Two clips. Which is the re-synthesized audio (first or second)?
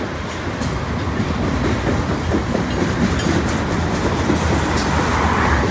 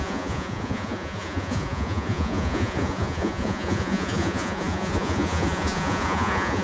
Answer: second